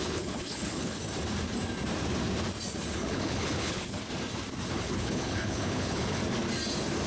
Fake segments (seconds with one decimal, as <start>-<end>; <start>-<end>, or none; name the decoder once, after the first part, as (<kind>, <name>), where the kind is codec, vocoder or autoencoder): 0.0-1.0 (codec, HILCodec); 2.9-4.0; 4.7-6.2